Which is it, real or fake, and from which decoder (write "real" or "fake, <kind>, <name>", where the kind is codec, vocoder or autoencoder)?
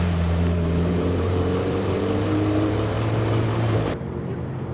fake, vocoder, BigVGAN v2